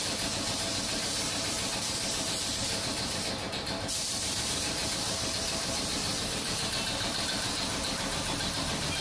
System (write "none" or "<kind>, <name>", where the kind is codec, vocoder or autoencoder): vocoder, BigVGAN v2